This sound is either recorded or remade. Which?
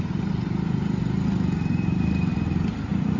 remade